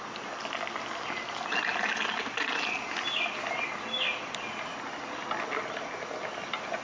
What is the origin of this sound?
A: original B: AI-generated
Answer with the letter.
A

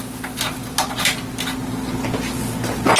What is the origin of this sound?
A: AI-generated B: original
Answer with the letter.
B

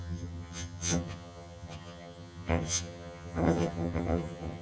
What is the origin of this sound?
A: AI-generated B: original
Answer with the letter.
A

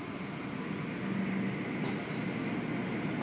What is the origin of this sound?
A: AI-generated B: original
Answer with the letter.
B